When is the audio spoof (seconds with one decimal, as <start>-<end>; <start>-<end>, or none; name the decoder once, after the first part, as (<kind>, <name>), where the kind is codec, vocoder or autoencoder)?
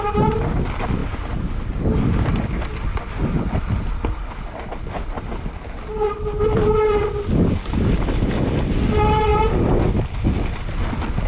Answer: none